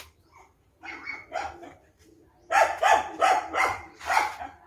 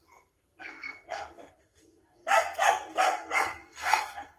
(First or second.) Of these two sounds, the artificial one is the second